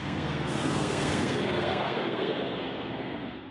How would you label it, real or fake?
fake